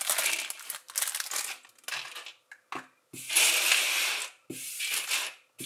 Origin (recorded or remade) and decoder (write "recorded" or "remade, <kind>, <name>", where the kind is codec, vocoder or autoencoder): recorded